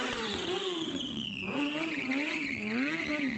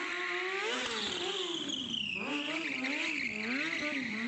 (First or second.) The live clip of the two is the second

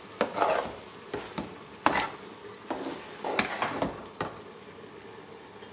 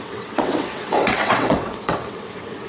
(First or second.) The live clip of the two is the first